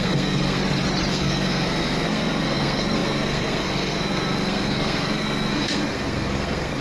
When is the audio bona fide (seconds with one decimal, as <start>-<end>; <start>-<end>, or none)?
0.6-1.1